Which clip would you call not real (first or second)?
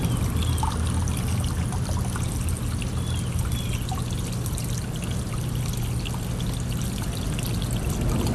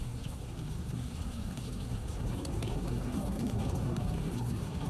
second